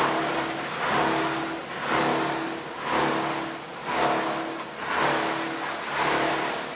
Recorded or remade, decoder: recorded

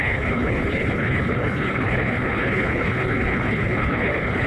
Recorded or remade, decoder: remade, codec, HILCodec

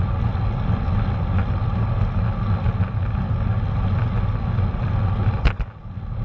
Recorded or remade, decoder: recorded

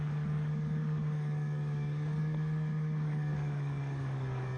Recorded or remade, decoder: remade, codec, DAC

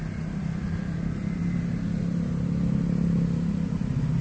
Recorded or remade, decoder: recorded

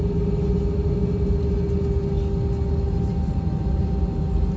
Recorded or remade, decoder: recorded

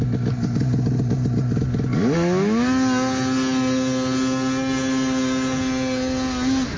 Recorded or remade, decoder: recorded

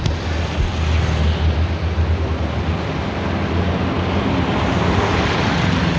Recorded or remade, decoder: recorded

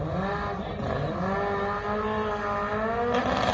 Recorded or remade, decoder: recorded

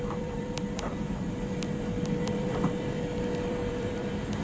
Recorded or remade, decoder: remade, vocoder, BigVGAN v2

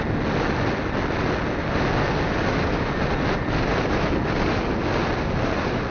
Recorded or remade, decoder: recorded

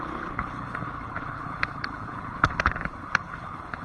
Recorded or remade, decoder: remade, codec, HILCodec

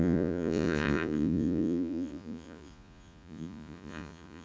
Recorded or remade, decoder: remade, vocoder, Vocos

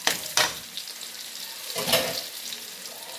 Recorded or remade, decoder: remade, vocoder, BigVGAN v2